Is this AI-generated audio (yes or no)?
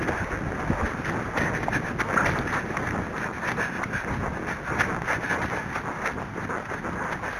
no